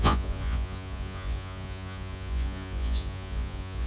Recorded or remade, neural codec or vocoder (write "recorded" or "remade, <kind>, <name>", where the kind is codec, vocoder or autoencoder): remade, vocoder, Vocos